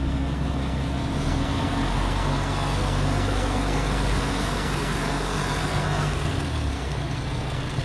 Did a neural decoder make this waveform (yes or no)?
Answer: yes